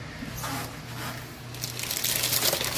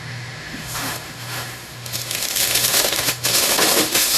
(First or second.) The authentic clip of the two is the first